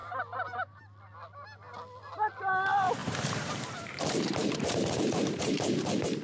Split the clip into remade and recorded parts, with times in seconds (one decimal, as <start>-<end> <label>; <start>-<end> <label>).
0.0-0.8 remade; 0.8-3.0 recorded; 3.0-5.5 remade; 5.5-6.2 recorded